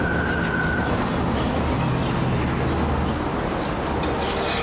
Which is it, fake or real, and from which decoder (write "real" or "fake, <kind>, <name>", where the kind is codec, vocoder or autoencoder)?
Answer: real